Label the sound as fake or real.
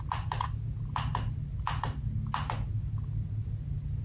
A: real